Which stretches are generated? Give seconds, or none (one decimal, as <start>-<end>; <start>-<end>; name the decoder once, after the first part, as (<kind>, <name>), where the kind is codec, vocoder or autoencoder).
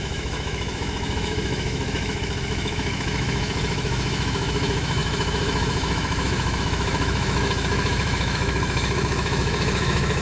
0.0-10.2 (autoencoder, DAC-VAE)